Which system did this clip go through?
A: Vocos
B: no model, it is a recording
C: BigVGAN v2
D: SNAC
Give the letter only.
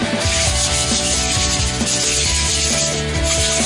B